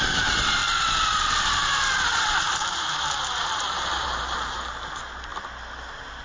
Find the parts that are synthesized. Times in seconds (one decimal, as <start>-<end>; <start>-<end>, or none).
0.0-0.6; 1.3-5.3